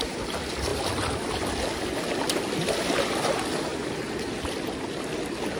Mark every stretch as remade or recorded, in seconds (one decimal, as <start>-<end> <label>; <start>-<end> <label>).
0.0-5.6 recorded